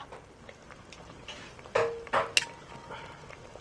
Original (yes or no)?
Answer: yes